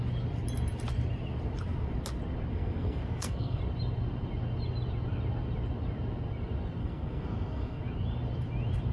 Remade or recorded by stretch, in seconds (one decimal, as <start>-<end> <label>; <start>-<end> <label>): 0.0-2.5 recorded; 2.5-3.6 remade; 3.6-6.8 recorded; 6.8-7.8 remade; 7.8-8.9 recorded